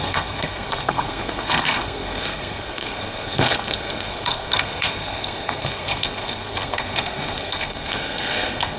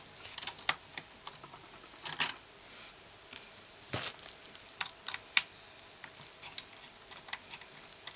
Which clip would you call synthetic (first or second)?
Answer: first